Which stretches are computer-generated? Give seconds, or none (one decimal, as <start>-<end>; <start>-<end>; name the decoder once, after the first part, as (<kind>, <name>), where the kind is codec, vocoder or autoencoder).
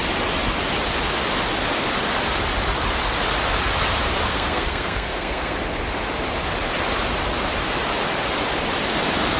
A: 4.3-5.6 (codec, SNAC)